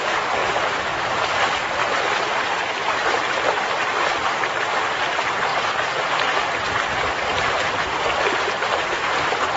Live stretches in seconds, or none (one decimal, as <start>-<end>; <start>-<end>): 0.0-0.4; 1.4-1.8; 2.7-5.5; 8.0-9.6